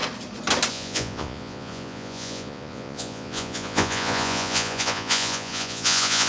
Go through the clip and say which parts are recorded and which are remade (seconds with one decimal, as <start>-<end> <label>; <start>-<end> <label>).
0.0-0.7 recorded; 0.7-6.3 remade